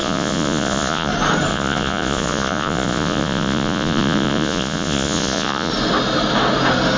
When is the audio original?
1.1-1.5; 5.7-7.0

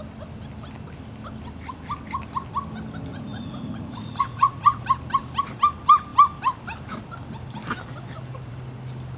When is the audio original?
0.0-3.1; 4.8-9.2